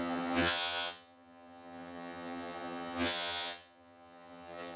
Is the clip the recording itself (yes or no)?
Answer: no